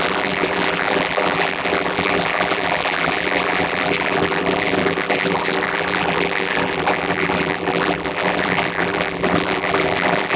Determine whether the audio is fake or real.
fake